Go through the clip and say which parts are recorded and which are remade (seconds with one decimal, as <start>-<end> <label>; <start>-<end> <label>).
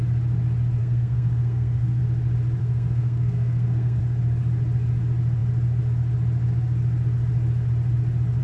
0.0-0.8 recorded; 0.8-2.0 remade; 2.0-2.6 recorded; 2.6-4.0 remade; 4.0-8.4 recorded